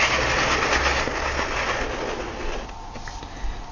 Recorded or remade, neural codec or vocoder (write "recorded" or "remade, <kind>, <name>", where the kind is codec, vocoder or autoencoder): recorded